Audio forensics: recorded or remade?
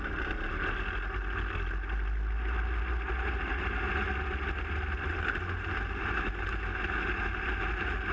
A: recorded